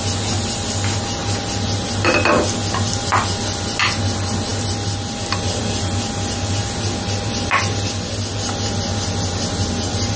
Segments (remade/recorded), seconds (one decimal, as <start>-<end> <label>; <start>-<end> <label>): 0.0-10.2 recorded